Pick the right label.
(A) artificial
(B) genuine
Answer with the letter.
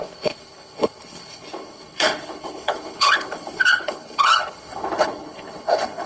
A